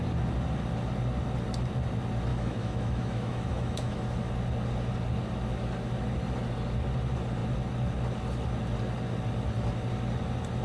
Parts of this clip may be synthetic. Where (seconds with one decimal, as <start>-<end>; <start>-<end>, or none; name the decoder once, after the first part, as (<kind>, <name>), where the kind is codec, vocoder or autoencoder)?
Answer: 2.3-4.3 (autoencoder, DAC-VAE)